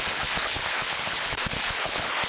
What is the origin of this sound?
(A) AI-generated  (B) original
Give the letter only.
A